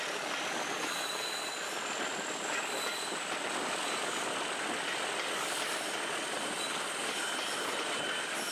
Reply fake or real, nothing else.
fake